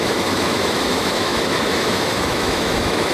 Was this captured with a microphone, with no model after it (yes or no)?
no